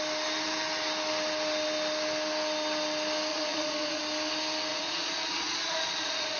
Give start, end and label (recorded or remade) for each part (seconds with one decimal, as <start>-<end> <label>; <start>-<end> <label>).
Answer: 0.0-3.3 recorded; 3.3-4.0 remade; 4.0-4.7 recorded; 4.7-6.4 remade